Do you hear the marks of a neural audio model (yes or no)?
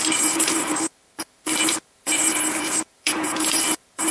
yes